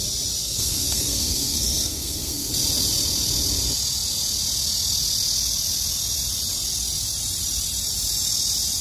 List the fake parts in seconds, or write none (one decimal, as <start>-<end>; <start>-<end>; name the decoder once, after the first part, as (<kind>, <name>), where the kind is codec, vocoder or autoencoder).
0.4-2.5 (codec, SNAC)